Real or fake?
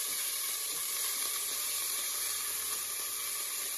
fake